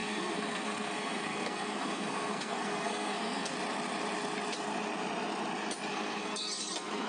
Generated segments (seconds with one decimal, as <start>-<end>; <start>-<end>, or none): 0.0-3.5; 5.9-7.1